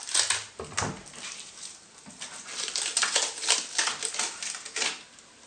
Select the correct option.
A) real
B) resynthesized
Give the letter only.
A